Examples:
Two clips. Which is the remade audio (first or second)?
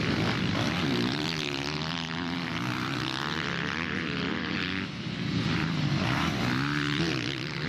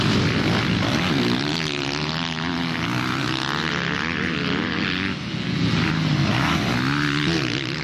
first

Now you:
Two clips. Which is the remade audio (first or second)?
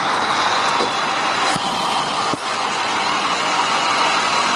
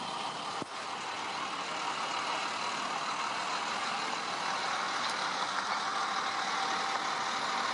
first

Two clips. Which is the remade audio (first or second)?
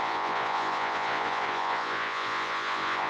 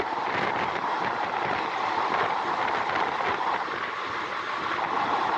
first